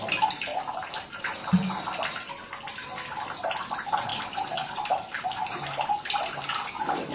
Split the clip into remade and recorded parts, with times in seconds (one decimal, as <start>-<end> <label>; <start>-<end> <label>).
0.0-0.5 recorded; 0.5-1.2 remade; 1.2-4.1 recorded; 4.1-6.6 remade; 6.6-7.1 recorded